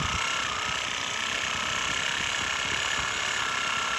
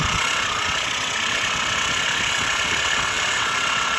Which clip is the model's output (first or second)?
second